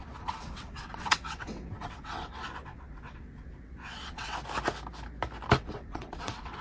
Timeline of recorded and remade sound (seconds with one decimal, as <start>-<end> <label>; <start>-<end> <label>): 0.0-4.4 remade; 4.4-5.6 recorded; 5.6-6.6 remade